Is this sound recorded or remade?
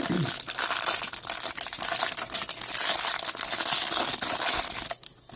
recorded